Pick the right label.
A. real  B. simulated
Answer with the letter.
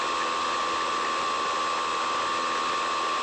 A